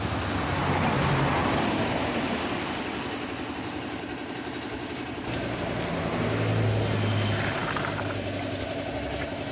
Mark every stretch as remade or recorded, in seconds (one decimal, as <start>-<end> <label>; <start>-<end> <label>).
0.0-9.5 recorded